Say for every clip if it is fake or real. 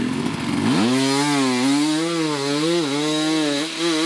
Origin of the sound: real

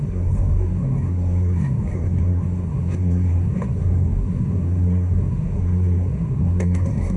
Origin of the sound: fake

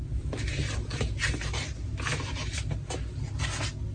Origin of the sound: real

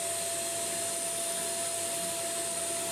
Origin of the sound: real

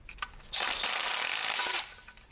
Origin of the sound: real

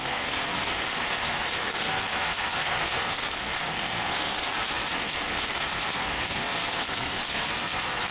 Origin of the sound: fake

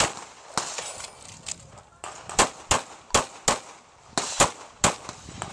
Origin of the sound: real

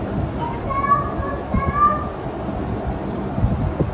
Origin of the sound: real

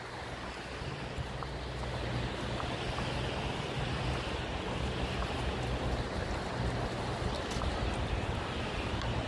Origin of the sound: real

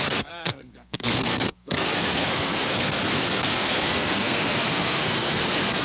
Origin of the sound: fake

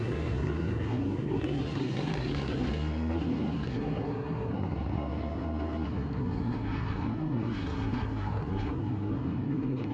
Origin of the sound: fake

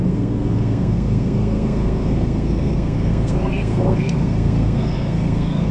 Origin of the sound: fake